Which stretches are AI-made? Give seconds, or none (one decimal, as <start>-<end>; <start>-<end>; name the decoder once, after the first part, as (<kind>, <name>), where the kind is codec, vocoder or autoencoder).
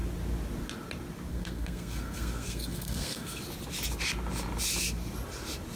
1.3-3.4 (codec, SNAC)